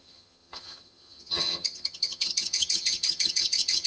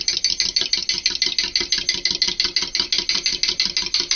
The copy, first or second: first